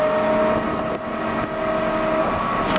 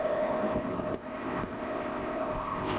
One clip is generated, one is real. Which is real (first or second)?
first